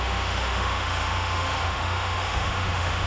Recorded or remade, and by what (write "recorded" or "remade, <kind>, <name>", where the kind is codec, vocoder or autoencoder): remade, autoencoder, DAC-VAE